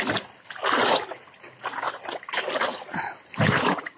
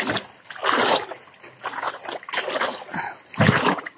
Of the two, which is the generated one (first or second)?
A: first